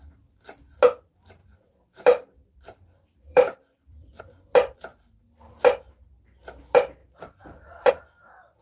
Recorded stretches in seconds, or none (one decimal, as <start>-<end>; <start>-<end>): 0.0-1.4; 4.2-7.0; 7.9-8.6